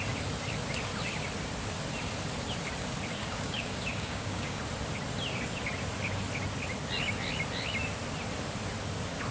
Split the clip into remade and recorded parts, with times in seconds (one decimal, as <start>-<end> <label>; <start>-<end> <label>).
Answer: 0.0-3.2 recorded; 3.2-4.6 remade; 4.6-9.3 recorded